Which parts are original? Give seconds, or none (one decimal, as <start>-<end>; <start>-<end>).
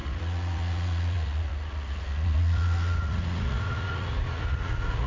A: none